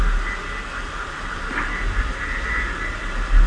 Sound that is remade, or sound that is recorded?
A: recorded